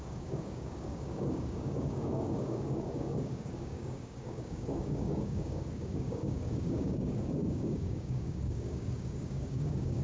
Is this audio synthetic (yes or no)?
yes